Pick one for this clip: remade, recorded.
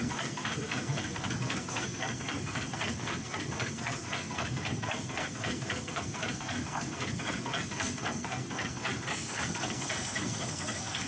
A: remade